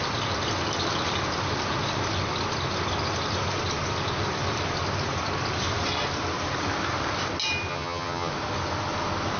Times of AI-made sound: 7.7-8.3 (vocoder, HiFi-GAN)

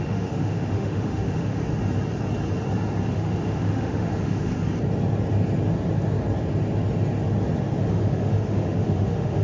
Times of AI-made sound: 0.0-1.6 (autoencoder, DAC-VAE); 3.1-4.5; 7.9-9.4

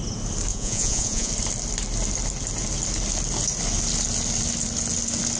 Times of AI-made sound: 0.5-1.3 (vocoder, Vocos)

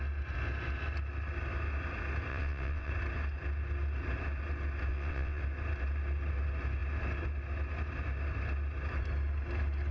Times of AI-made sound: 2.3-2.9 (vocoder, WaveNeXt); 4.9-5.4

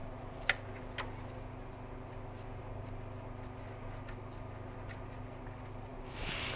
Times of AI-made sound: none